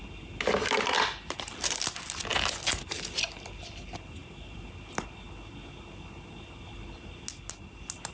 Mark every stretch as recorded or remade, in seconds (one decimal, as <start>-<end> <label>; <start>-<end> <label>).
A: 0.0-8.1 recorded